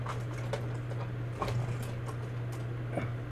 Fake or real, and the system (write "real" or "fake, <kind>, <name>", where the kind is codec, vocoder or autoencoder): real